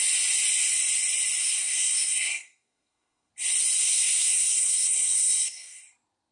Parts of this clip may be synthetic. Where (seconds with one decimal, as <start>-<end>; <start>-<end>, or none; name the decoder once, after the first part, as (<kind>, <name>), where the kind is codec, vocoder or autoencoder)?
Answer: 1.4-3.3 (codec, SNAC); 3.8-5.8